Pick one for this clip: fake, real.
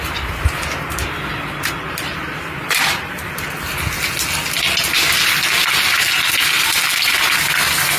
real